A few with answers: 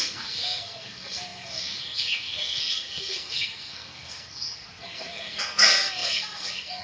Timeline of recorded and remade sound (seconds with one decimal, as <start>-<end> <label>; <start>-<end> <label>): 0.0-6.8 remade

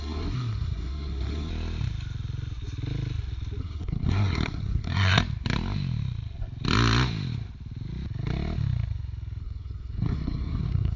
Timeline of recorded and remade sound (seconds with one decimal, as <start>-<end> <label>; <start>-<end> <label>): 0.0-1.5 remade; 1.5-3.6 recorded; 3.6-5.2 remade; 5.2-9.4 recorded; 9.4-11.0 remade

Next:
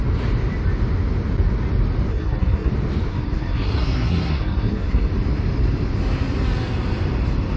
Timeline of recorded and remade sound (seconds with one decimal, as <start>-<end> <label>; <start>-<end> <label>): 0.0-2.1 recorded; 2.1-2.7 remade; 2.7-3.1 recorded; 3.1-5.1 remade; 5.1-7.6 recorded